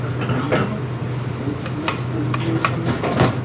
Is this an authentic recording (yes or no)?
yes